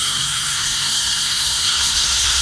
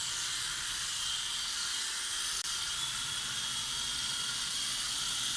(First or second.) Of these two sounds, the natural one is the second